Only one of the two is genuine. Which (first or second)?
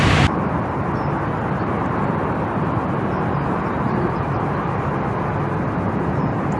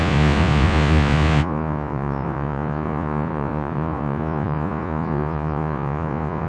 first